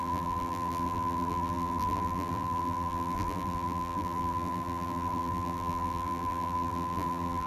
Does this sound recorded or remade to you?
remade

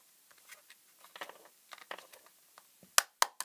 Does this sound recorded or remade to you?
recorded